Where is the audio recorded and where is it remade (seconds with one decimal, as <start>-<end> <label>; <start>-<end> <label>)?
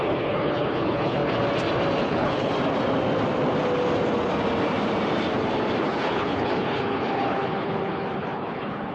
0.0-1.2 remade; 1.2-2.0 recorded; 2.0-2.5 remade; 2.5-5.8 recorded; 5.8-8.9 remade